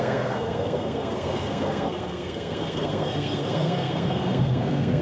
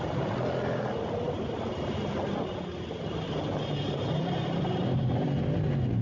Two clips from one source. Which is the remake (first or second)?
first